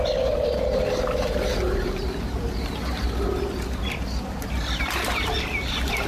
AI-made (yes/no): no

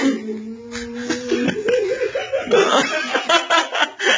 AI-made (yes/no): no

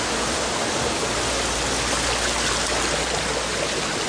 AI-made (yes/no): no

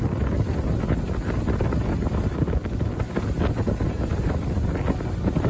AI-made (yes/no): no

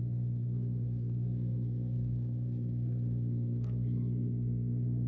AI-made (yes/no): yes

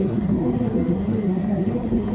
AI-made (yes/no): yes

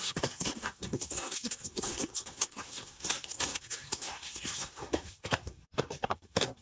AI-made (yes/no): yes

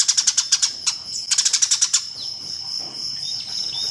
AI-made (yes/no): no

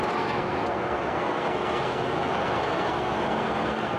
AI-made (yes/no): yes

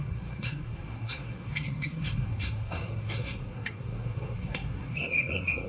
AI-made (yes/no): yes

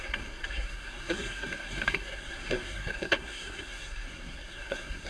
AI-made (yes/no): yes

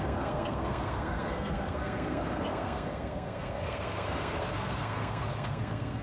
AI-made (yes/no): yes